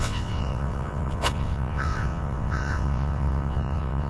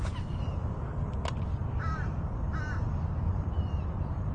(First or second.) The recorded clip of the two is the second